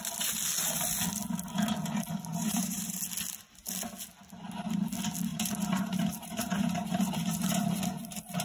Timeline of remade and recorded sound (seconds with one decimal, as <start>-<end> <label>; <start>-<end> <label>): 0.0-2.3 recorded; 2.3-3.0 remade; 3.0-5.3 recorded; 5.3-7.8 remade; 7.8-8.4 recorded